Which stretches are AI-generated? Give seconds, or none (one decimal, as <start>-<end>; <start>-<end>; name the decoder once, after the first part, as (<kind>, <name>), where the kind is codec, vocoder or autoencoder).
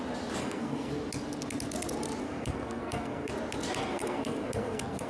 0.4-0.9 (codec, SNAC); 2.2-3.3; 3.8-5.1